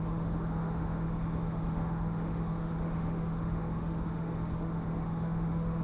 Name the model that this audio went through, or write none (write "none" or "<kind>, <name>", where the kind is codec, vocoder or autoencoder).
autoencoder, DAC-VAE